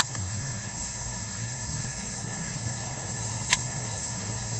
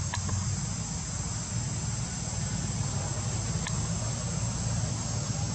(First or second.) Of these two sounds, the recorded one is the second